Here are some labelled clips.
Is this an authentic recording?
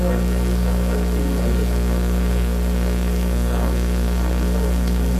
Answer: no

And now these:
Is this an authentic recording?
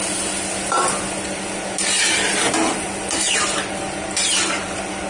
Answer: yes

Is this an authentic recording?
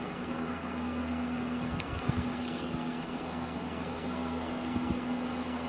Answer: no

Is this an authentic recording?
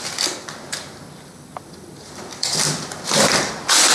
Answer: no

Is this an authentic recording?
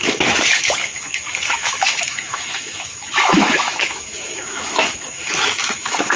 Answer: no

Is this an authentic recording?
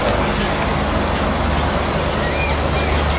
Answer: yes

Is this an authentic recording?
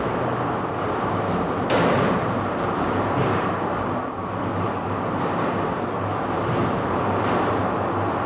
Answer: no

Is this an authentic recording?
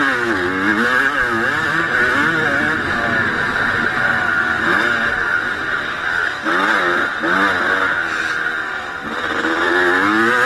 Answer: yes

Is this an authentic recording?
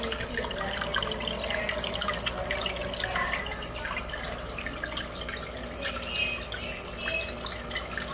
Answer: yes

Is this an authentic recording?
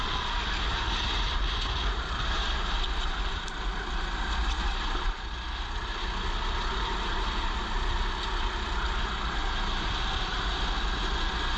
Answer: yes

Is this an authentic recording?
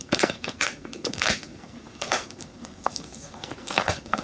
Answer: no